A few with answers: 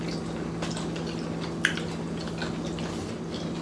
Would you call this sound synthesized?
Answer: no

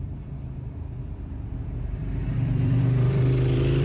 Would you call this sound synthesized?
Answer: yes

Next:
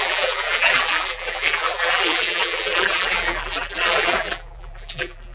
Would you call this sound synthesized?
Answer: yes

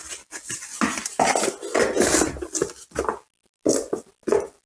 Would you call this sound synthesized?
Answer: no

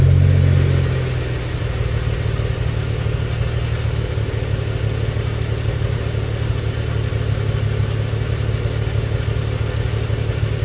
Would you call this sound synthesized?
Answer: no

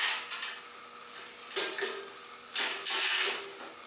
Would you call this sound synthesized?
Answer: no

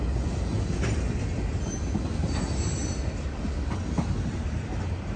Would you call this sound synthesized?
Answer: no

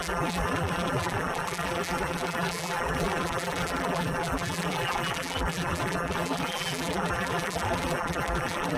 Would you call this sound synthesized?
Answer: yes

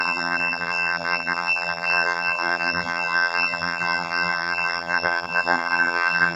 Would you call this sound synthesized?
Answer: yes